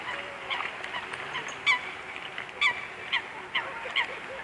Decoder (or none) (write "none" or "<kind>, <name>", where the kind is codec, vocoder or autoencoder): none